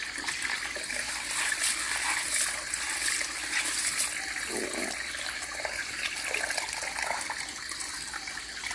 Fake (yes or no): no